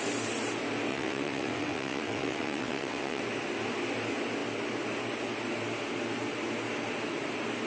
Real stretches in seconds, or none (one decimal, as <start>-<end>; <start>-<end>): 0.0-0.9; 3.2-7.7